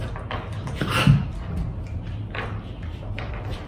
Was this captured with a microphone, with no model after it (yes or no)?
no